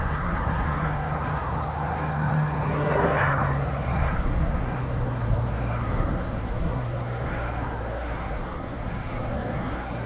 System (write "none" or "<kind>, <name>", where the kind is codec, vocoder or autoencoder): codec, SNAC